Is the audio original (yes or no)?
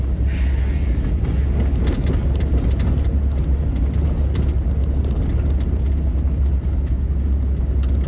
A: yes